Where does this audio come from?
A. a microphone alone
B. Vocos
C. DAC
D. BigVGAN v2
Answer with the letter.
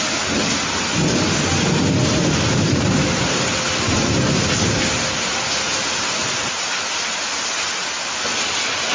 A